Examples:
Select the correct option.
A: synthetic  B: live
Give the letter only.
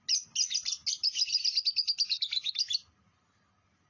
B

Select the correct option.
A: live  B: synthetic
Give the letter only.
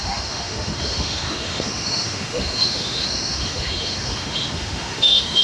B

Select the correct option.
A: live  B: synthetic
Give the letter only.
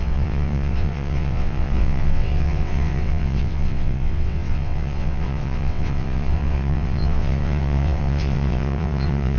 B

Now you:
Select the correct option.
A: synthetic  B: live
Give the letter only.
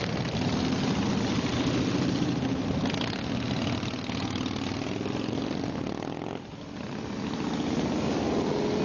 B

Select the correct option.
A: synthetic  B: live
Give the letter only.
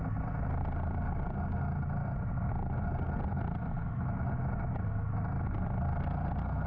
B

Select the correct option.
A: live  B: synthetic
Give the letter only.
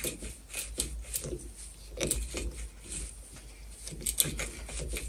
A